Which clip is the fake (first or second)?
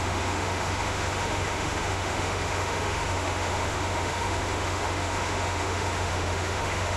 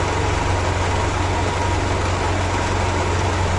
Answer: first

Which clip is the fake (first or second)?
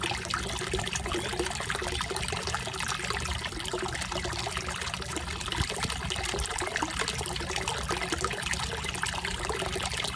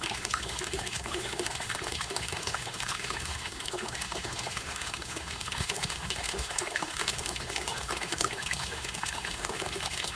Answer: second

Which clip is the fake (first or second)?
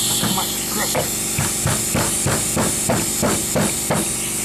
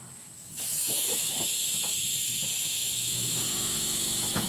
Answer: second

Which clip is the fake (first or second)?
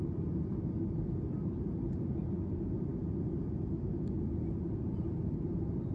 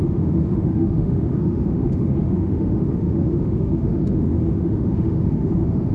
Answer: second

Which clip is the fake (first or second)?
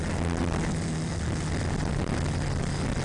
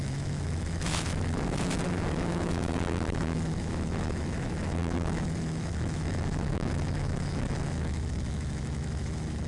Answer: second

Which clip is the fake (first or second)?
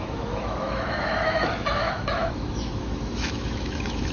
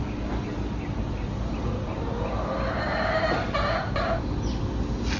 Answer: first